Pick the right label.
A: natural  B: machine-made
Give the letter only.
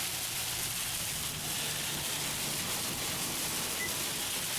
A